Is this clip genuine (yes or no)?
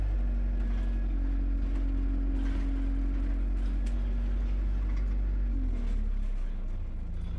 yes